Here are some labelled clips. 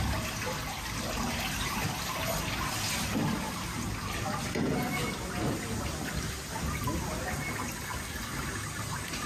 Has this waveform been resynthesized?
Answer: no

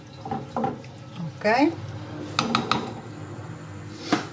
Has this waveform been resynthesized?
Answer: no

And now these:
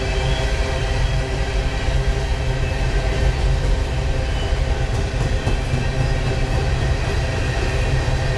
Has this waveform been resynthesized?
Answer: no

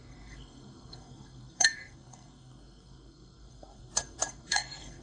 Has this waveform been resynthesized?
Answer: yes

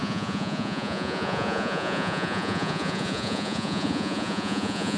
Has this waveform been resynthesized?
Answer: yes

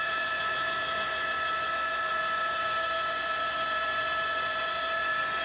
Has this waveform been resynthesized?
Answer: yes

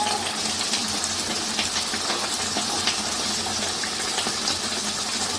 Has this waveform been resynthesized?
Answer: no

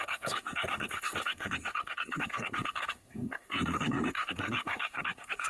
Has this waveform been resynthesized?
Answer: yes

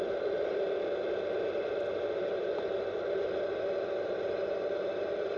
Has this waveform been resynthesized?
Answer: no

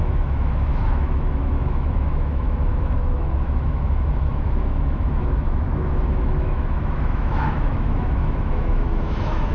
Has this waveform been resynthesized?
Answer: yes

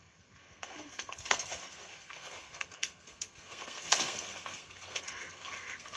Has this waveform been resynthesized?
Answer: yes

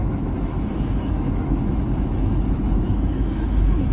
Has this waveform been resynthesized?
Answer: yes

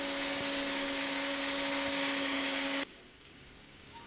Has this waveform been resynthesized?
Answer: yes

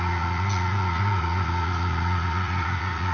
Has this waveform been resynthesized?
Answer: yes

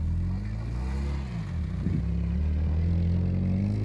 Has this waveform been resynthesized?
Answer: no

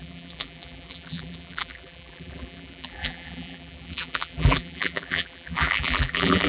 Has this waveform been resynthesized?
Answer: yes